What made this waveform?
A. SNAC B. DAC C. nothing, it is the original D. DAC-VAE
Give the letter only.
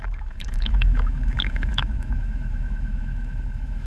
D